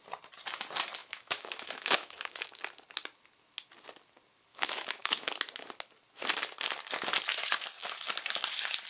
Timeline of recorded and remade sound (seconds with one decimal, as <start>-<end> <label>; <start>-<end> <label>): 0.0-1.0 recorded; 1.0-2.6 remade; 2.6-4.5 recorded; 4.5-5.3 remade; 5.3-8.9 recorded